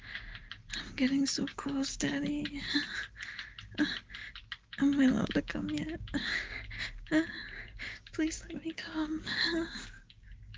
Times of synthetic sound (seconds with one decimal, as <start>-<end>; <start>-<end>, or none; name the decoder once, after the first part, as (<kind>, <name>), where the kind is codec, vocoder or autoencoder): 1.5-2.3 (codec, DAC); 5.2-10.6